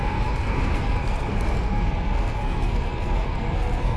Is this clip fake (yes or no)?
yes